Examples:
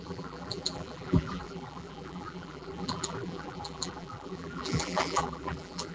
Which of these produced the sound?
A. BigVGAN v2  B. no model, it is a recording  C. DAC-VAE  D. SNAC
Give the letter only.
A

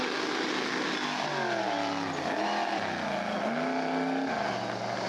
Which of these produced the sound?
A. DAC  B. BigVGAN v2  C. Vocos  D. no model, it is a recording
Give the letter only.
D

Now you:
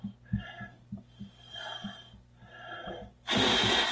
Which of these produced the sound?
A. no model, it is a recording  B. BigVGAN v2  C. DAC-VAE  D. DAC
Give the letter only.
A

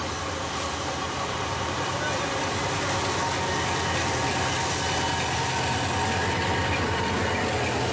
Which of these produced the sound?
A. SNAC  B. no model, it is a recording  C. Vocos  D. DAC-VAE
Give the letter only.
B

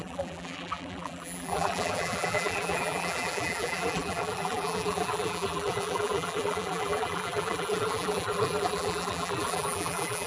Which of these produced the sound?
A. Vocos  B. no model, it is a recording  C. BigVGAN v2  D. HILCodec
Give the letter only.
C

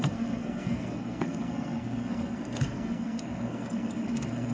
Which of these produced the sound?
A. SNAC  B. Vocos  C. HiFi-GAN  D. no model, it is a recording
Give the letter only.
A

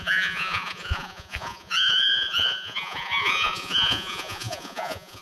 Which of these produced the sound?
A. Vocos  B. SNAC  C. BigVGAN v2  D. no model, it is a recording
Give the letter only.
A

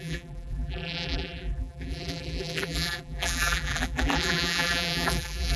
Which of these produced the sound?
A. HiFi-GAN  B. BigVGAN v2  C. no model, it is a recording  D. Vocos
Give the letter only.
B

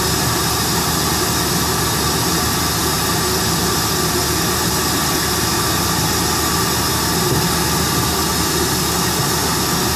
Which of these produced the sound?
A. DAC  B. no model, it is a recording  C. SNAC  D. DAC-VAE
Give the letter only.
B